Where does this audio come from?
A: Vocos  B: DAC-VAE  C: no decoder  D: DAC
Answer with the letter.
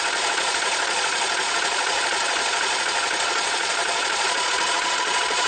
A